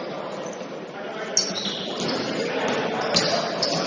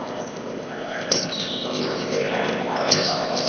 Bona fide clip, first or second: first